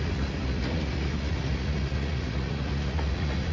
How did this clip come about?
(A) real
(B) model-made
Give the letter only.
B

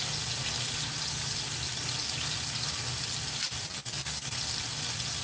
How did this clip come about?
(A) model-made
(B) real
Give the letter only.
B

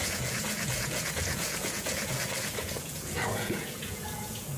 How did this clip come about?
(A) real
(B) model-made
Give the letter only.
B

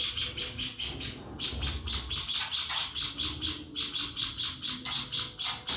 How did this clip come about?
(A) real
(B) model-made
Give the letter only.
A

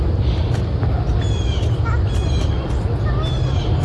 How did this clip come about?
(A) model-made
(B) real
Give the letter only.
B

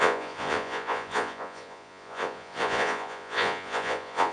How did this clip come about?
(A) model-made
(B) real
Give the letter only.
A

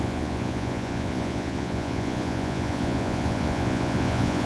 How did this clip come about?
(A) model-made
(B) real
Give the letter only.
A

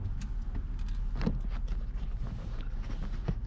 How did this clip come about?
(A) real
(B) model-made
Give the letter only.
A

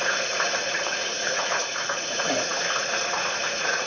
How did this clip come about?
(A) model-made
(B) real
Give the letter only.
A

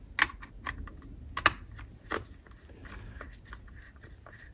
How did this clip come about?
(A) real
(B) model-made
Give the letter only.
A